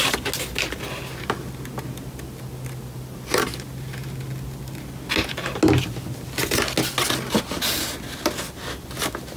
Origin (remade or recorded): recorded